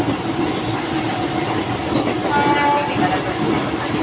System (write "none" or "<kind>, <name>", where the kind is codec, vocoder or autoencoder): none